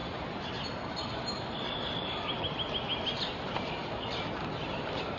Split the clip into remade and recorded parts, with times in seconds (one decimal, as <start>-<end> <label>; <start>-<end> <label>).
0.0-5.2 recorded